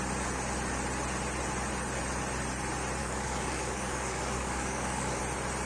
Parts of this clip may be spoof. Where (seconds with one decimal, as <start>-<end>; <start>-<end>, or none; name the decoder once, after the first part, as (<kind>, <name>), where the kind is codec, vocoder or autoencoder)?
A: 3.0-5.2 (codec, DAC)